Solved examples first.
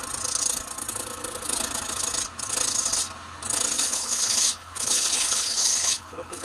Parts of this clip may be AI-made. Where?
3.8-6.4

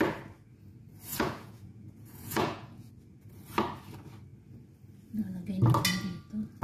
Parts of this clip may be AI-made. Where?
1.1-2.9

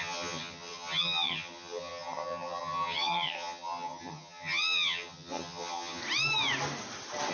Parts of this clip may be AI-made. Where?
0.0-6.0

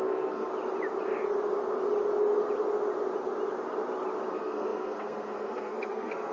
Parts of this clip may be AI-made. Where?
0.0-0.5; 4.3-6.3

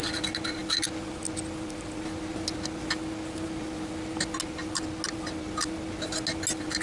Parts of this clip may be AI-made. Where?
none

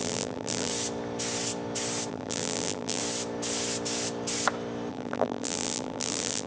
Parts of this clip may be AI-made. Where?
0.0-0.7; 2.1-3.0; 4.9-6.5

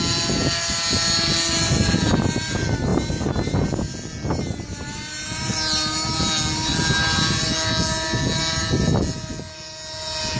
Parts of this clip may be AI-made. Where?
none